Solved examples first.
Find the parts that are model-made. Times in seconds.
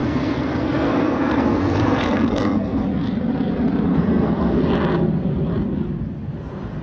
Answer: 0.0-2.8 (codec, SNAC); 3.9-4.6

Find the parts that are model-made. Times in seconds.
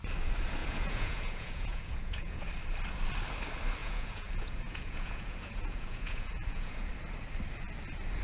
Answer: 0.6-2.5 (vocoder, Vocos); 3.8-6.9